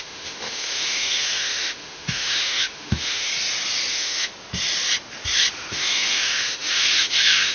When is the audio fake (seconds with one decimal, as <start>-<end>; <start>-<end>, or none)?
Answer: 0.0-3.3; 3.9-4.3; 5.7-7.5